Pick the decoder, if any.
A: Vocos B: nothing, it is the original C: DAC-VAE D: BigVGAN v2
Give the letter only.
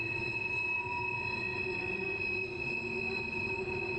B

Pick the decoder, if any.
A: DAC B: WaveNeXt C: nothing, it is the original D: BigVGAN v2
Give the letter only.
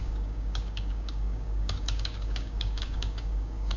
A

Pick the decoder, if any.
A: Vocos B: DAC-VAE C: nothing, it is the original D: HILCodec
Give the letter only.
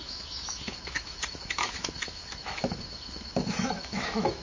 B